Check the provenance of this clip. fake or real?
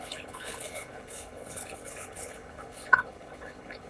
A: fake